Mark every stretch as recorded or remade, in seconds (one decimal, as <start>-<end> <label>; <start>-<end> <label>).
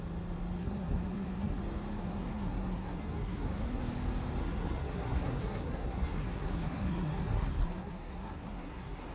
0.0-0.6 recorded; 0.6-1.6 remade; 1.6-2.0 recorded; 2.0-3.8 remade; 3.8-4.4 recorded; 4.4-9.1 remade